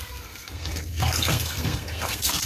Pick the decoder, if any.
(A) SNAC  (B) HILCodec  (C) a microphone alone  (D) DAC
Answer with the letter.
A